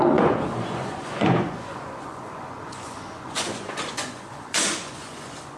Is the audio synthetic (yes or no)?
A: yes